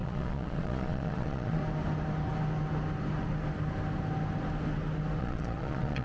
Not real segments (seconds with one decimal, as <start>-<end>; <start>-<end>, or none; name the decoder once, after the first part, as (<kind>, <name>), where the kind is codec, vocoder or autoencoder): 0.0-1.6 (vocoder, Vocos); 5.2-6.0